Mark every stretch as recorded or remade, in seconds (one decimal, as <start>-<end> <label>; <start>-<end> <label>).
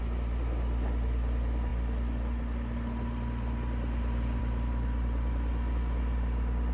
0.0-6.7 recorded